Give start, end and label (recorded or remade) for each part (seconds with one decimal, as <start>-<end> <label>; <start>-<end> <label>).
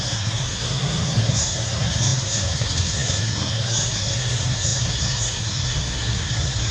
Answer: 0.0-6.7 remade